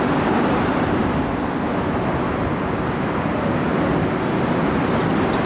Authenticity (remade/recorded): recorded